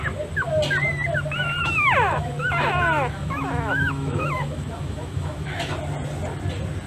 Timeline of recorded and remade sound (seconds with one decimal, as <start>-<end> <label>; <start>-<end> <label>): 0.0-1.6 recorded; 1.6-5.7 remade; 5.7-6.9 recorded